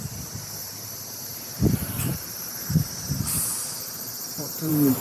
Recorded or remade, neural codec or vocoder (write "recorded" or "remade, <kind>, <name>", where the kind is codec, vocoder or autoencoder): remade, vocoder, BigVGAN v2